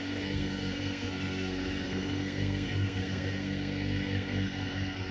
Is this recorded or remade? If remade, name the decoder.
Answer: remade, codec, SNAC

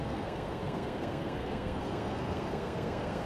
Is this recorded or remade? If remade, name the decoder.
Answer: remade, codec, SNAC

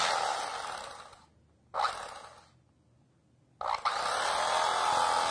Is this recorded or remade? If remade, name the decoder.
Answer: recorded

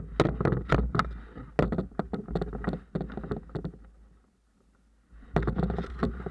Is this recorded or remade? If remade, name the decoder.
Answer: recorded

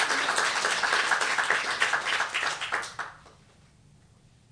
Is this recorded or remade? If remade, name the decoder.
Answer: recorded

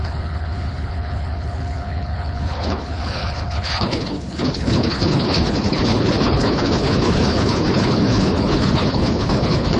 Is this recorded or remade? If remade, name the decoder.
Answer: remade, codec, HILCodec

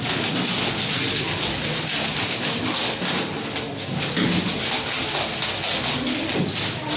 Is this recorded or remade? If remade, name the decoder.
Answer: recorded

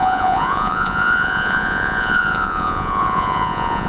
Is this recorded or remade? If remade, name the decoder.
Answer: remade, vocoder, Vocos